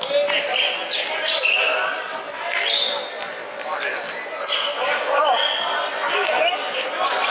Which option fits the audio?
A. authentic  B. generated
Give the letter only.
A